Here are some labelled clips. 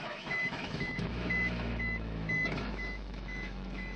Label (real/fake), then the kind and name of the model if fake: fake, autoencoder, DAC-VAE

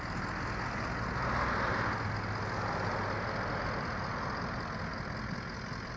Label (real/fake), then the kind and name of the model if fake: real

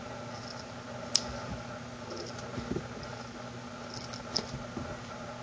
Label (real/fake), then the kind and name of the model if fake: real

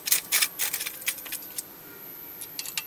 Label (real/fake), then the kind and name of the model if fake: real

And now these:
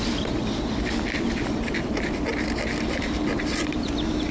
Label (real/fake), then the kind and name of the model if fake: real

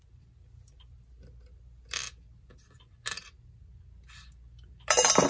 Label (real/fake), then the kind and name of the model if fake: real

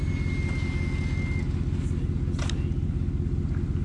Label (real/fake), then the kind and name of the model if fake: real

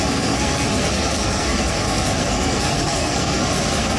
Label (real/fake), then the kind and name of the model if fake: fake, codec, SNAC